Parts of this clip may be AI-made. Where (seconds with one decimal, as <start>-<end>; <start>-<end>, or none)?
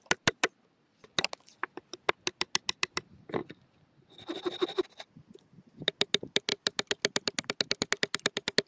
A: none